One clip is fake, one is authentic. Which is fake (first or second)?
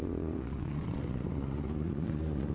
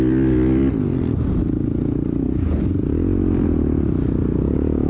first